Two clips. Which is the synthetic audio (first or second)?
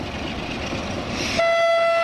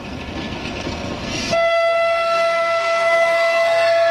second